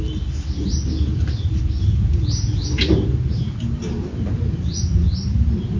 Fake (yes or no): no